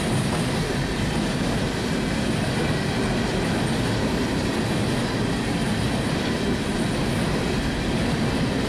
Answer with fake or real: real